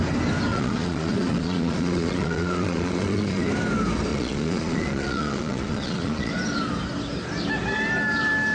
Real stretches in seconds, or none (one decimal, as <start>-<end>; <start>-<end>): 0.0-0.5; 3.5-4.1; 6.3-8.5